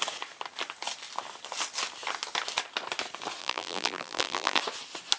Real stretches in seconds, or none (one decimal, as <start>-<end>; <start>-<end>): 0.0-3.4; 4.6-5.2